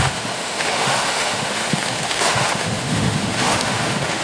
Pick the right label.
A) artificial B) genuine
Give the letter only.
A